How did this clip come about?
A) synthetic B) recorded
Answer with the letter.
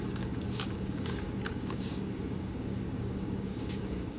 A